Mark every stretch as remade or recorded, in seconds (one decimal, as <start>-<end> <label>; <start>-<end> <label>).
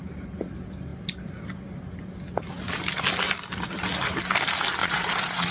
0.0-4.8 recorded; 4.8-5.5 remade